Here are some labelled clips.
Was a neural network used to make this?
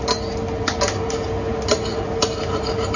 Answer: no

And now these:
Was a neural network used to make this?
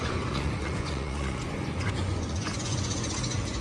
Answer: yes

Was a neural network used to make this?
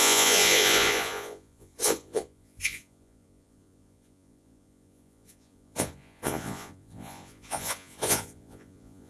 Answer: yes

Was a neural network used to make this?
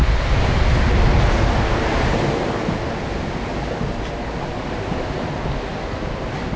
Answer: no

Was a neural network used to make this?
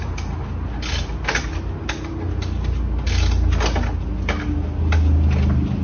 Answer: no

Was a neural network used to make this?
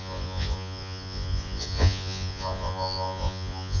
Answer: yes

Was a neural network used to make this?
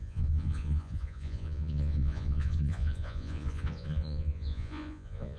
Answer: yes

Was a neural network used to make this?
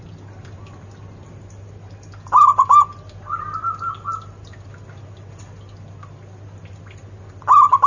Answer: no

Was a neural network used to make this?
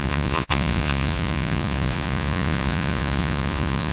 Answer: yes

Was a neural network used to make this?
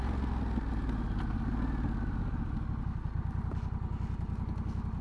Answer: no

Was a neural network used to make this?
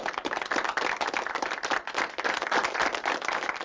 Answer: no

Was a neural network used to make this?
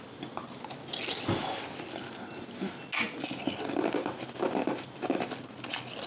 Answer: no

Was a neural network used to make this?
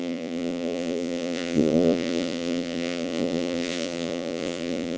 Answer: yes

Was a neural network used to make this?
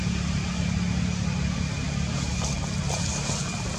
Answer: no